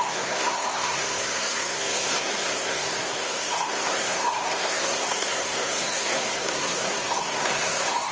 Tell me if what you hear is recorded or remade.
remade